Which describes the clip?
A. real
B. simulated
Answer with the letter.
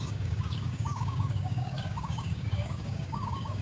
B